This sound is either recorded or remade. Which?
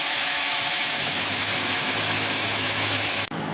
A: remade